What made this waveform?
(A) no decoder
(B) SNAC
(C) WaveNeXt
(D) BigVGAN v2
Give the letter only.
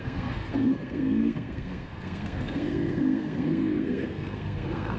B